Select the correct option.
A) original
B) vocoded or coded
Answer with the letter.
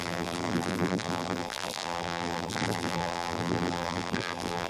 B